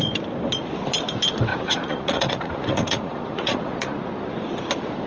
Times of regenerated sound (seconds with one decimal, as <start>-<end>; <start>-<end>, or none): 1.5-4.1